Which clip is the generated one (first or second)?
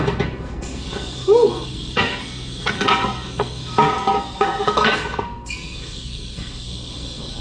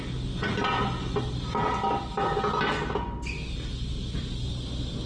first